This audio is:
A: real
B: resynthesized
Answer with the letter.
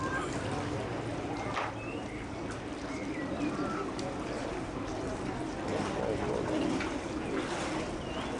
A